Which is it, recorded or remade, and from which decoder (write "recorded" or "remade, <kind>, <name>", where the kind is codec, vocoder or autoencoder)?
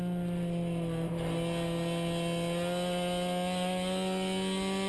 recorded